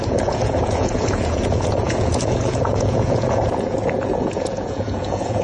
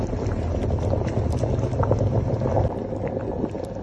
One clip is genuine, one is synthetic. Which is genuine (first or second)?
second